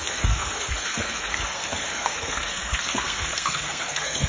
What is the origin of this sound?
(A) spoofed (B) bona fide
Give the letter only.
A